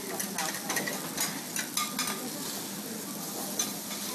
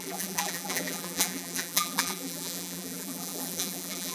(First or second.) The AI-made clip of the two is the second